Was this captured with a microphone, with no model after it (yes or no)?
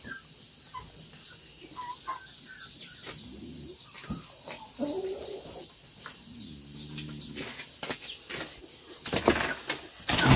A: yes